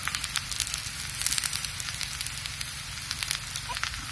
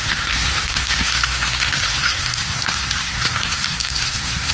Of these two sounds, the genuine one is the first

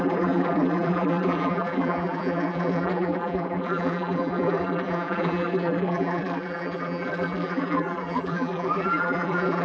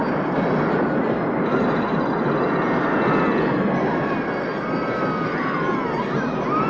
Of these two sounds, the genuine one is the second